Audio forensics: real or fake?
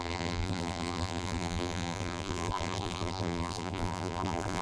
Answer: fake